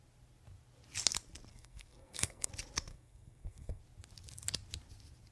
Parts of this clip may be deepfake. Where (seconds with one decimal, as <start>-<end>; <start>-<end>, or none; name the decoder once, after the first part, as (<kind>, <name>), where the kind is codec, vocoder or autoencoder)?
1.5-2.5 (codec, SNAC); 2.9-3.8